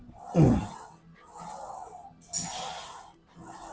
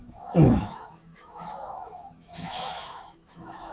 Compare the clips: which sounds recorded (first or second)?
first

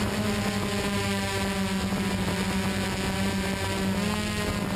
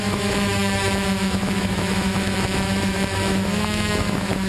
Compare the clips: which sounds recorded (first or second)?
first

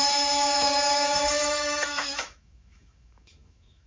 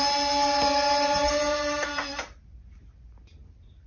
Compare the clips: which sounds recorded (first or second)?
second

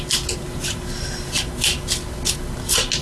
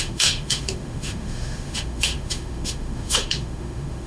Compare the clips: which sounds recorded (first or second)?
first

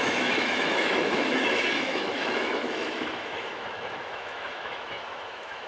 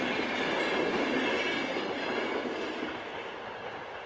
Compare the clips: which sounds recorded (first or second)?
second